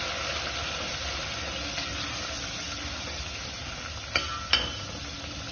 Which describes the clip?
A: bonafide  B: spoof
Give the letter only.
A